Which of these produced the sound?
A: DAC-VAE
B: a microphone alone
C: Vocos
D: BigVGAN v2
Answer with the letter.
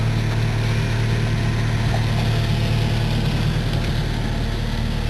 B